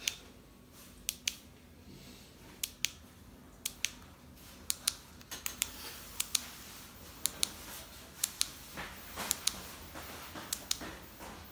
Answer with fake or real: real